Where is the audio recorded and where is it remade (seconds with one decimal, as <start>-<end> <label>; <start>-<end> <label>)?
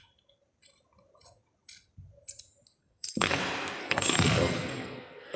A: 0.0-2.8 recorded; 2.8-3.4 remade; 3.4-3.8 recorded; 3.8-5.4 remade